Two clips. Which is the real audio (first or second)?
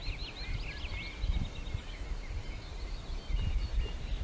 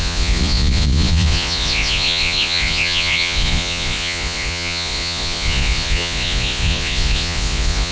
first